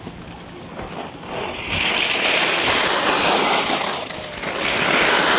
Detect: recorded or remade recorded